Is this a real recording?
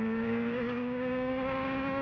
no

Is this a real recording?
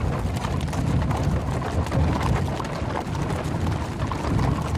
yes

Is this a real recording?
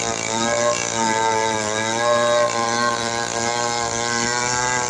yes